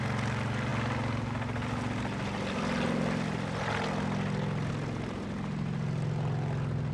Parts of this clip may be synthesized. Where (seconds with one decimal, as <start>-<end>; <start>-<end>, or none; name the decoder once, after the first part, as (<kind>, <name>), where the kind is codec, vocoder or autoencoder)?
none

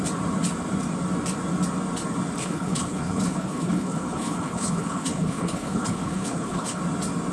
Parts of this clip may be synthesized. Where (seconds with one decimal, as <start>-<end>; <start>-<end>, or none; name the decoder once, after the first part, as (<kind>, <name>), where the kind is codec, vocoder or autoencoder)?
2.4-6.8 (codec, HILCodec)

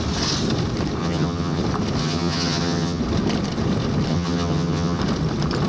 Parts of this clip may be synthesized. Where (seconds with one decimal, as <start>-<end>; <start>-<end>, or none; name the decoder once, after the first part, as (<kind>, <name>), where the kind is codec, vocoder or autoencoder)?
1.0-1.6 (vocoder, HiFi-GAN); 2.0-3.0; 4.1-5.0

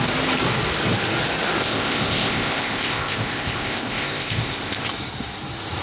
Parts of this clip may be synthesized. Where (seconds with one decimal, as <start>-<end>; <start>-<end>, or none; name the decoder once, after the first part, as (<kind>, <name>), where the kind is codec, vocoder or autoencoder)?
1.6-4.9 (codec, ZipCodec)

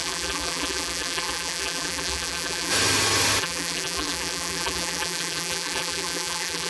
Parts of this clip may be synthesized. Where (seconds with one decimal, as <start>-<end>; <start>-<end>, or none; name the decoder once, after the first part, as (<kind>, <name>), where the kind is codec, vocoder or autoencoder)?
0.0-2.7 (vocoder, BigVGAN v2); 3.4-6.7

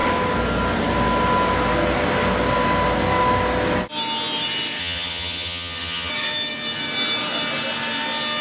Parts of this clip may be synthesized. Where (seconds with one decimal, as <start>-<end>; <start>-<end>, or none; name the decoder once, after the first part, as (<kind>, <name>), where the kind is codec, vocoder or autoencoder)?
4.8-6.1 (vocoder, HiFi-GAN)

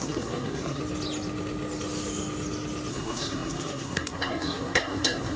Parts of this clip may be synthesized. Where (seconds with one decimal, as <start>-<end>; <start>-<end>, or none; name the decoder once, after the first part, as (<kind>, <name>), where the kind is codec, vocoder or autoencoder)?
0.0-0.8 (codec, SNAC); 2.9-5.4

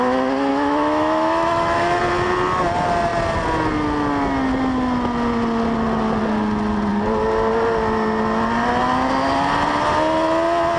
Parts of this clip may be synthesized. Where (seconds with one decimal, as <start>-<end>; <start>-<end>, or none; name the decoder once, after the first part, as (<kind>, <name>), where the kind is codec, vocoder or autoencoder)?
0.5-2.0 (autoencoder, DAC-VAE)